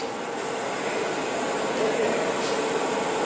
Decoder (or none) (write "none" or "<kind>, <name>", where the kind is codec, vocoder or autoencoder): none